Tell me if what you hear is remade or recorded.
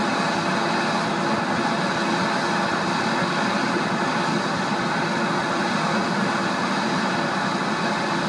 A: recorded